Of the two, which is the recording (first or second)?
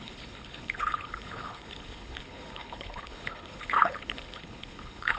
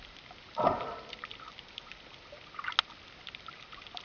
second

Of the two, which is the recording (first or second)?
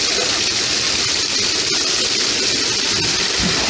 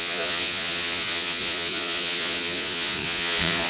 first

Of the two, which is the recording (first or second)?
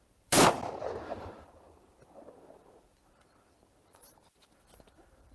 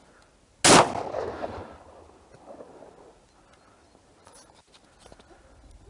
second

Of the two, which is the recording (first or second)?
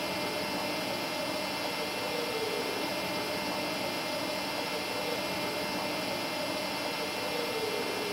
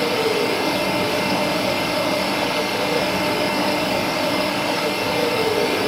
first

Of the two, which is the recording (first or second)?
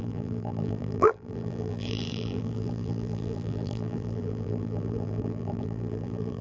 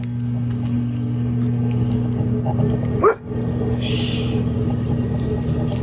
second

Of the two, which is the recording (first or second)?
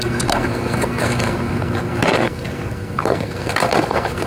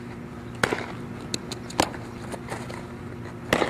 second